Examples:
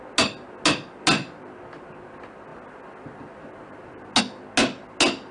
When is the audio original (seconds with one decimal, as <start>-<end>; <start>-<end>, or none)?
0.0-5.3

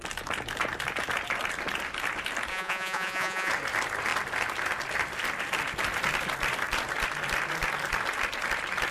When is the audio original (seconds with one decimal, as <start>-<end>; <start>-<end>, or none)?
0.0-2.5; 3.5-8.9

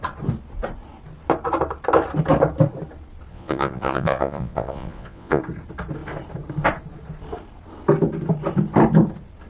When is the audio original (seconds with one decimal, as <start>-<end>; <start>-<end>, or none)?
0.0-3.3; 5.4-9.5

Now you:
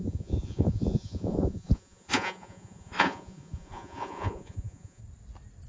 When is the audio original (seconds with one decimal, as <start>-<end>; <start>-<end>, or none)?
5.0-5.7

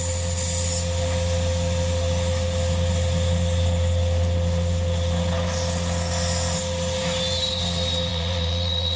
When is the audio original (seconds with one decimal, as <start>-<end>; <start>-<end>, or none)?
0.0-8.1